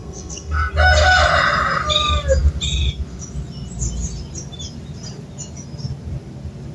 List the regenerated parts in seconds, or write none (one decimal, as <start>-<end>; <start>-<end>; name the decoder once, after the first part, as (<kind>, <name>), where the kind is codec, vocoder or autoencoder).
0.0-0.7 (codec, SNAC)